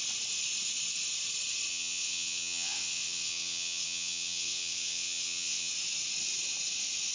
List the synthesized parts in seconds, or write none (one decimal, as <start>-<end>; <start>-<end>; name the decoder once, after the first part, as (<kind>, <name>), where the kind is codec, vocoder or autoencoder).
1.7-5.7 (vocoder, WaveNeXt)